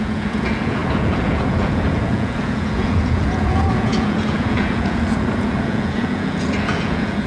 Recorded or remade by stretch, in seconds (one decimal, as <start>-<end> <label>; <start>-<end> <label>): 0.0-7.3 remade